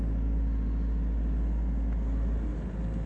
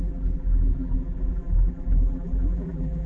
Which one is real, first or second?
first